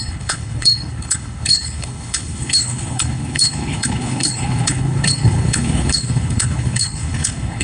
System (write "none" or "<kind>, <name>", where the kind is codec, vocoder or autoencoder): codec, HILCodec